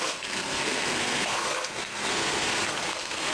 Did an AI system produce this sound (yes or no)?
yes